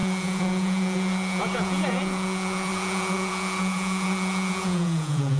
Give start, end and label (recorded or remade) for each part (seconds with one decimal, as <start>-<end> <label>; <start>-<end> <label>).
0.0-5.4 remade